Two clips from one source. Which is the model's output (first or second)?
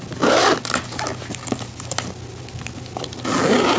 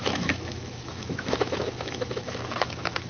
second